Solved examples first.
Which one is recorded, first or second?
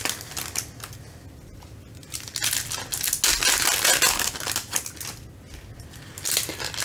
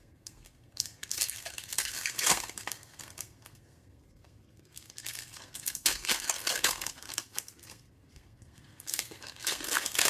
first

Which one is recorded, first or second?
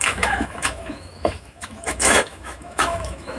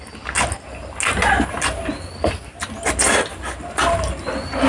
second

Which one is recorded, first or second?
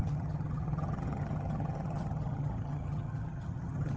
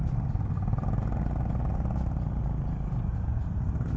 second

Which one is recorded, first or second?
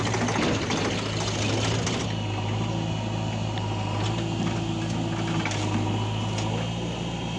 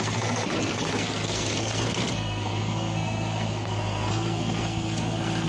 first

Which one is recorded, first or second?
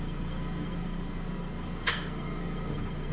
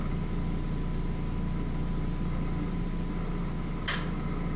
second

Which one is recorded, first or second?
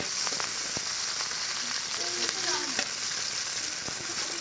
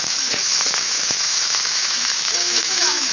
first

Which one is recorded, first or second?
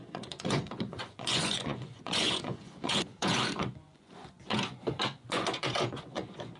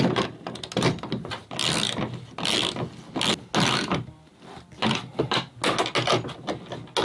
second